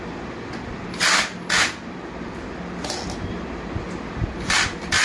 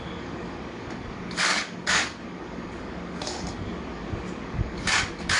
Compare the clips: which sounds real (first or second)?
first